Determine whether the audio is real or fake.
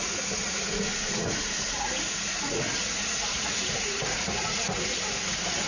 fake